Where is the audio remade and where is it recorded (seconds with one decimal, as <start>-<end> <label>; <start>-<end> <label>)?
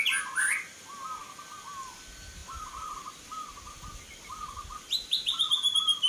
0.0-6.1 recorded